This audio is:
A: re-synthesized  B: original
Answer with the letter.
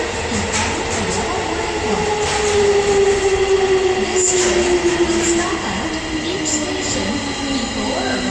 B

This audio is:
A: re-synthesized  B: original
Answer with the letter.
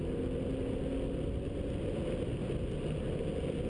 B